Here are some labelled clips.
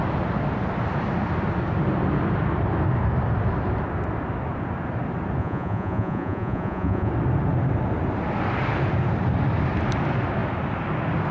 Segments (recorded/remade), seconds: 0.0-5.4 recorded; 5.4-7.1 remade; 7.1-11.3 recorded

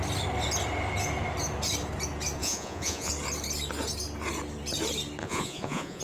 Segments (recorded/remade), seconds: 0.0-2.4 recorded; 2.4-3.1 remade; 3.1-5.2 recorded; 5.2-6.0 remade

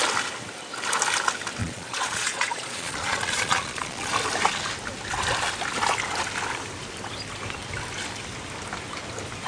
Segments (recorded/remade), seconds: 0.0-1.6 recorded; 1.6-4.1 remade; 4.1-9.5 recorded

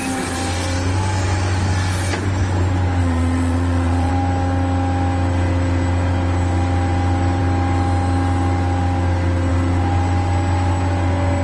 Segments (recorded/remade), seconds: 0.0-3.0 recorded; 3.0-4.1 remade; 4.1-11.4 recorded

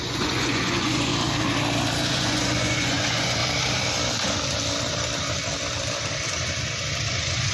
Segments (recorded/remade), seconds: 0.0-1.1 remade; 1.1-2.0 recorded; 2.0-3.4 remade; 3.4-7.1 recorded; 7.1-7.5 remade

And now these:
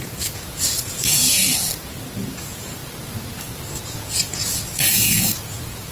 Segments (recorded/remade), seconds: 0.0-1.4 remade; 1.4-2.4 recorded; 2.4-2.8 remade; 2.8-3.8 recorded; 3.8-5.9 remade